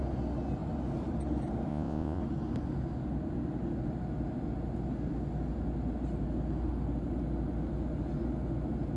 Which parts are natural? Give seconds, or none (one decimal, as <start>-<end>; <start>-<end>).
0.0-1.7; 2.2-9.0